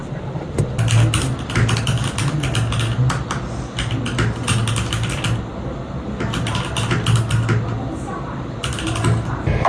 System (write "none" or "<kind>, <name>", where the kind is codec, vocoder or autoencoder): none